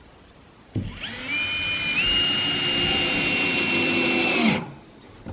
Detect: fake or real real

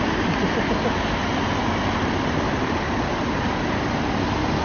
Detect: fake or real real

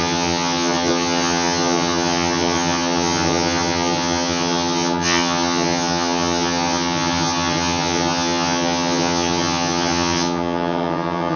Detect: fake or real fake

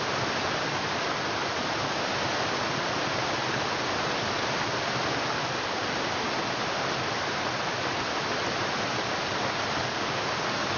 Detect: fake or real real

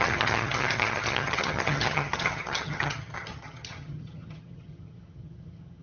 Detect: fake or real fake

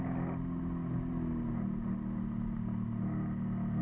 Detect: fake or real real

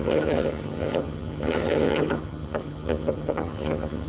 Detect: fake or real fake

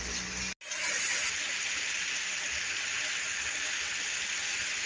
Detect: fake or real real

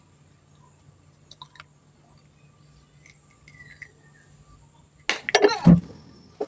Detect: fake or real real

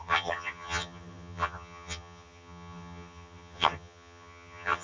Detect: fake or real fake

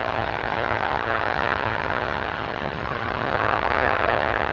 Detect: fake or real fake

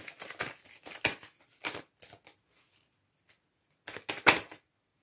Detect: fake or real real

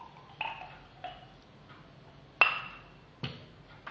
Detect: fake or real real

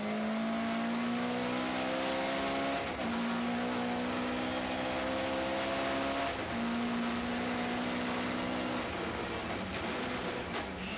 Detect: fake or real real